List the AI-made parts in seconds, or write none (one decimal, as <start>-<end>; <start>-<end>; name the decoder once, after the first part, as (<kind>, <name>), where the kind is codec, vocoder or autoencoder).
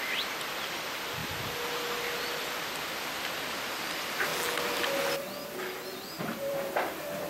0.0-1.2 (vocoder, BigVGAN v2); 2.6-4.3; 6.2-7.3